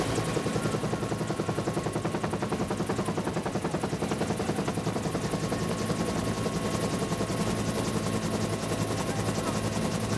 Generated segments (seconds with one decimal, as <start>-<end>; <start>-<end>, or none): none